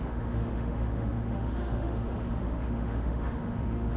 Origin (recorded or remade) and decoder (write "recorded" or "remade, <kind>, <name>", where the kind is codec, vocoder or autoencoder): remade, autoencoder, DAC-VAE